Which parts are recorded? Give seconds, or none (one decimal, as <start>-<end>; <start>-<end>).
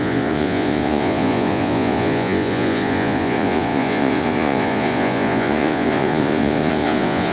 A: none